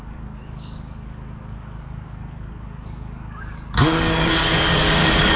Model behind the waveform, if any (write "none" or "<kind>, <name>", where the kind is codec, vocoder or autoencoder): codec, DAC